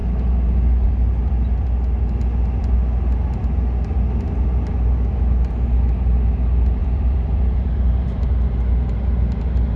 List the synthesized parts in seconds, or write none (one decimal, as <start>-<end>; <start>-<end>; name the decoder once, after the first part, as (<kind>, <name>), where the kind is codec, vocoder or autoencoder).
6.8-8.7 (vocoder, BigVGAN v2)